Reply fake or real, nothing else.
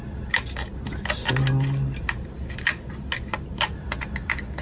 real